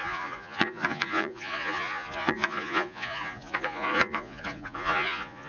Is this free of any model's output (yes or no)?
no